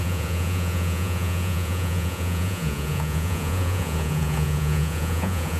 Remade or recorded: remade